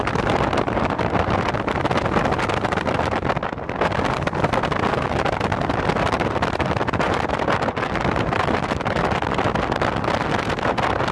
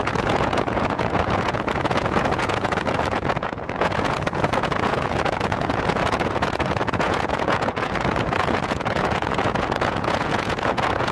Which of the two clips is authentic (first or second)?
first